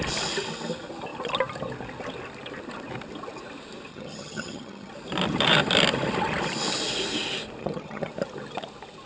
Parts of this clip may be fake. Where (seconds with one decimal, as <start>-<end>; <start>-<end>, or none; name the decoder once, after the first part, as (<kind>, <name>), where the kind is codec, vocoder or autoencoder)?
3.9-4.9 (vocoder, HiFi-GAN); 7.6-8.1